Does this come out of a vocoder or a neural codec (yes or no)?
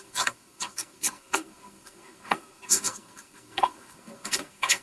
yes